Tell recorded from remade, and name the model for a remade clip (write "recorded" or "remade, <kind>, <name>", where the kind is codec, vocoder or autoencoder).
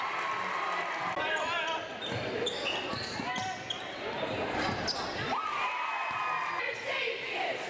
recorded